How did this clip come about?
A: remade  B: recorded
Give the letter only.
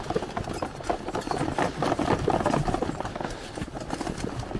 B